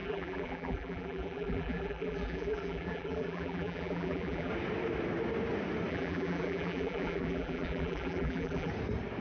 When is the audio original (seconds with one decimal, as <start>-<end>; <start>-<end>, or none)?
4.5-5.9; 8.7-9.2